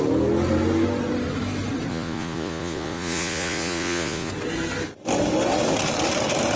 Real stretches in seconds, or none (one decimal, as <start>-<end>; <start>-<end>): 0.0-1.9; 4.3-6.6